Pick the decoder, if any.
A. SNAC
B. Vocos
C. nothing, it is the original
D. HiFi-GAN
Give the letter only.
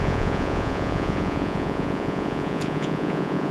B